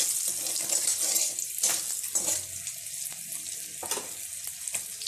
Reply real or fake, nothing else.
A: real